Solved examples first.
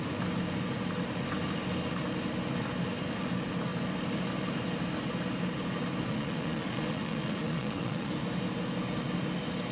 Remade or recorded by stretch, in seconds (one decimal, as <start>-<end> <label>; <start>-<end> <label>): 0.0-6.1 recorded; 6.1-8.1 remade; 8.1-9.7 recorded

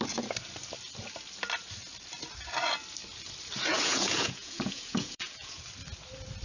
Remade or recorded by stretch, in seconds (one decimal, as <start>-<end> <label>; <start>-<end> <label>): 0.0-3.7 recorded; 3.7-5.6 remade; 5.6-6.4 recorded

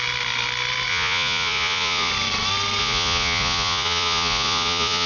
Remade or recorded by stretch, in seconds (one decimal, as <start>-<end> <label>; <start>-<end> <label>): 0.0-0.9 recorded; 0.9-2.1 remade; 2.1-2.8 recorded; 2.8-5.1 remade

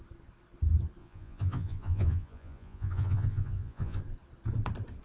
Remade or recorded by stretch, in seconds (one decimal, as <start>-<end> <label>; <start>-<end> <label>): 0.0-1.0 recorded; 1.0-4.0 remade; 4.0-5.0 recorded

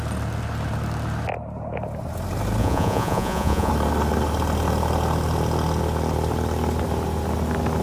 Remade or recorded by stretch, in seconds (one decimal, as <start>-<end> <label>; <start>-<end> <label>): 0.0-2.6 recorded; 2.6-3.7 remade; 3.7-7.8 recorded

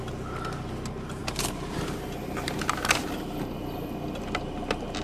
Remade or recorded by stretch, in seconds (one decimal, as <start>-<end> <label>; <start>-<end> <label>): 0.0-5.0 recorded

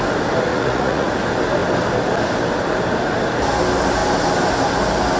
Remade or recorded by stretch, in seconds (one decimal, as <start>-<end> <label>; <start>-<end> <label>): 0.0-0.5 recorded; 0.5-1.1 remade; 1.1-5.2 recorded